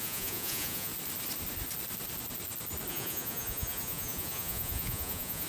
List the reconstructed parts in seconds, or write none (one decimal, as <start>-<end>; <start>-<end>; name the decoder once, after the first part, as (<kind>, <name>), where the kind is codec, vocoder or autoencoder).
0.0-0.9 (vocoder, Vocos); 2.9-5.5